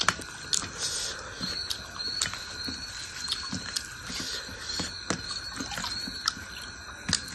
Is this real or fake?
real